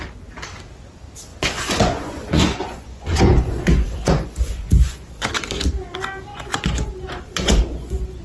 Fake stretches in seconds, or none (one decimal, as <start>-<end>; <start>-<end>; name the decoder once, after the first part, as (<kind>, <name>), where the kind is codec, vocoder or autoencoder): 1.3-5.3 (vocoder, Vocos); 6.3-8.2